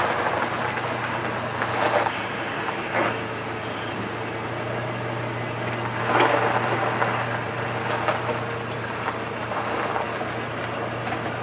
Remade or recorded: recorded